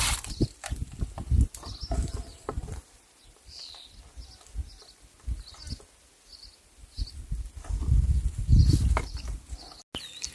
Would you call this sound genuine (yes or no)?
yes